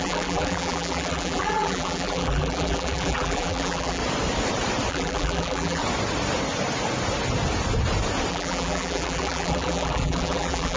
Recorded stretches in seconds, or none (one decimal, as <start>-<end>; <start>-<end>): 4.0-4.9; 5.8-8.3